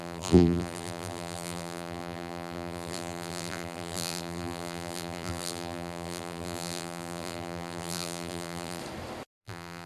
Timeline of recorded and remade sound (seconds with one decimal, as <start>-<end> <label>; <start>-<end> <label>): 0.0-8.8 remade; 8.8-9.4 recorded; 9.4-9.9 remade